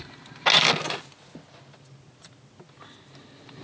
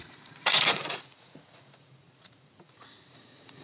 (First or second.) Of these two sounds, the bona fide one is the first